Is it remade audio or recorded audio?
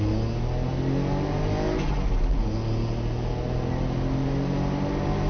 recorded